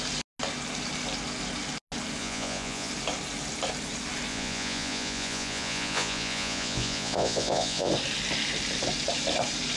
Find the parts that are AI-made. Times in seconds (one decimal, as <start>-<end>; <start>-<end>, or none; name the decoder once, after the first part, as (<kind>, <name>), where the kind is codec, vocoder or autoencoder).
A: 2.2-2.9 (vocoder, Vocos); 4.3-7.9

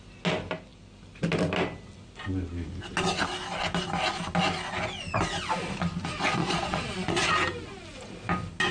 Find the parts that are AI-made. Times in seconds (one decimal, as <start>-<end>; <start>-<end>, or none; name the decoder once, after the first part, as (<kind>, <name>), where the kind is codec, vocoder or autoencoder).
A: 6.4-7.3 (vocoder, Vocos)

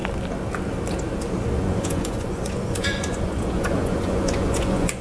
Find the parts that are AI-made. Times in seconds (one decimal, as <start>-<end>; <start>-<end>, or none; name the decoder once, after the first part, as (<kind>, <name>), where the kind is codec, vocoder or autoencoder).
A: 1.6-5.0 (vocoder, Vocos)

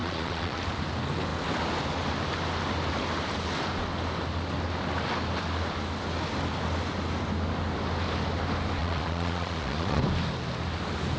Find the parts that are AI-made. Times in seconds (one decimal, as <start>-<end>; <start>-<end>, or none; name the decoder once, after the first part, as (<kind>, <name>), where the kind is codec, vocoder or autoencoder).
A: 0.0-0.6 (vocoder, Vocos); 8.8-10.0

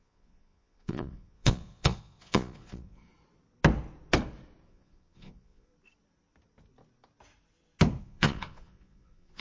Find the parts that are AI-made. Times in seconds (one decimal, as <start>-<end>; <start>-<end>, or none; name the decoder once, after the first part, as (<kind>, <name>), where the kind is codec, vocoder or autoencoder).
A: 0.0-3.1 (vocoder, Vocos); 4.7-5.7; 8.0-9.4

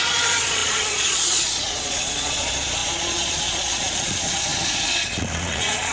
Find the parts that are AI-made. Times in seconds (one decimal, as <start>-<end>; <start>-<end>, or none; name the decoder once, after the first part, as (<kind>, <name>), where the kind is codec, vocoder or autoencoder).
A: 0.0-5.9 (vocoder, Vocos)

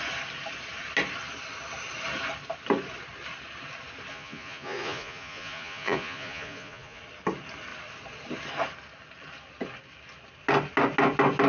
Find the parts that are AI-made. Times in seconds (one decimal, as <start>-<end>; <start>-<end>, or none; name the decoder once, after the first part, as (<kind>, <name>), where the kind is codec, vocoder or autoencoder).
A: 4.1-7.0 (vocoder, Vocos)